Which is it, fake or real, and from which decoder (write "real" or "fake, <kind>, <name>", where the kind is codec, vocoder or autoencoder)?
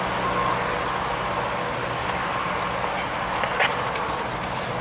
real